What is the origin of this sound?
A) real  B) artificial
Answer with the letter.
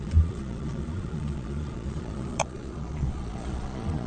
B